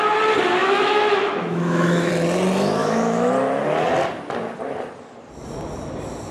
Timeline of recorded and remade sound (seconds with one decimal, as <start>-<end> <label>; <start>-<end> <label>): 0.0-0.6 recorded; 0.6-2.1 remade; 2.1-2.8 recorded; 2.8-3.3 remade; 3.3-6.3 recorded